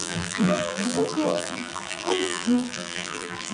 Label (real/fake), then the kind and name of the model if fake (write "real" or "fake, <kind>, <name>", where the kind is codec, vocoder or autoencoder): fake, vocoder, BigVGAN v2